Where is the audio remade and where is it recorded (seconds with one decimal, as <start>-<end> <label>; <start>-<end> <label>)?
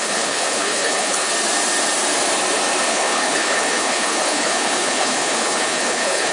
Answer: 0.0-1.3 remade; 1.3-2.9 recorded; 2.9-6.3 remade